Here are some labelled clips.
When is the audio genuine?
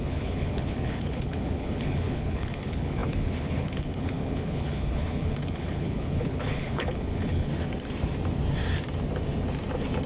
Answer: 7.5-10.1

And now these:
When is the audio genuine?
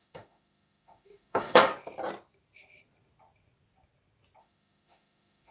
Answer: 1.7-4.4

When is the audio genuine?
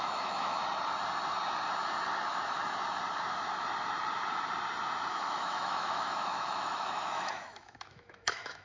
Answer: 0.6-5.1